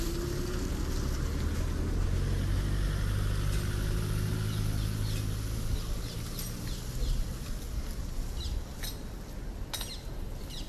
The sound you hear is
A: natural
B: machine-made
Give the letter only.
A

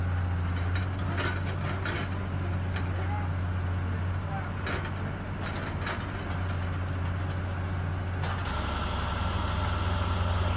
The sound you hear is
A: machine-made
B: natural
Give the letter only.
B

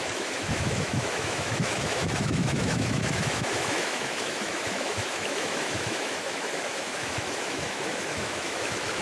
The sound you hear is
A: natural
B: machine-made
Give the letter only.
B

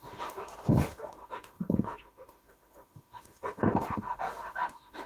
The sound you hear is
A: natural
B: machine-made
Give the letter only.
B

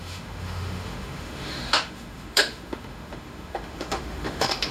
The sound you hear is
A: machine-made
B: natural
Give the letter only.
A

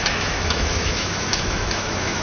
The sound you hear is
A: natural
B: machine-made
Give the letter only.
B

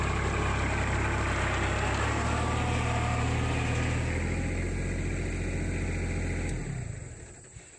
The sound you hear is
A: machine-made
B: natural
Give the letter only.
B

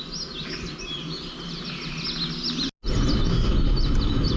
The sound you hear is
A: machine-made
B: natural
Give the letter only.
B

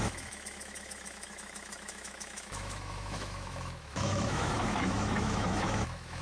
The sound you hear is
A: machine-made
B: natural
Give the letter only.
A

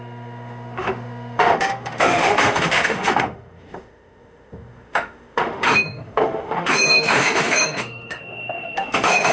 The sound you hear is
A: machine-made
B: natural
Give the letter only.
A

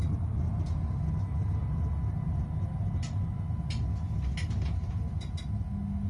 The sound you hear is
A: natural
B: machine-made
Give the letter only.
A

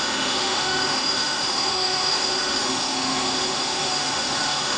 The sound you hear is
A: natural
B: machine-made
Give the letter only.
B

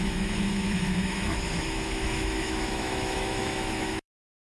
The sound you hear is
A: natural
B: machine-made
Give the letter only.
B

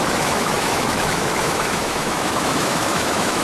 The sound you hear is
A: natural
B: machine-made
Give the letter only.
B